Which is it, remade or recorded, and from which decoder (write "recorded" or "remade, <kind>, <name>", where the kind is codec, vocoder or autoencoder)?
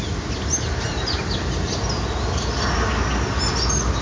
recorded